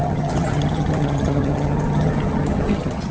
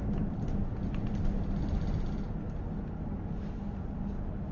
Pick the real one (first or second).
second